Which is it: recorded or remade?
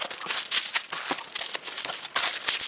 recorded